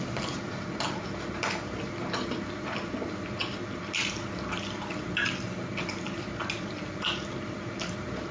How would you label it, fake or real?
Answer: real